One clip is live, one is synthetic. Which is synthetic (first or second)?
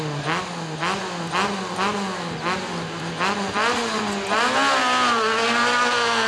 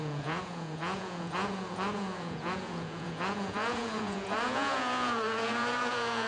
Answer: second